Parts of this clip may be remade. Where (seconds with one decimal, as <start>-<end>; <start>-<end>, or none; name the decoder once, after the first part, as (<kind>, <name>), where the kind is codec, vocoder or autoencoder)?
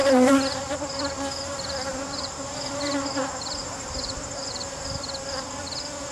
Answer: 0.0-1.1 (vocoder, BigVGAN v2); 1.9-5.6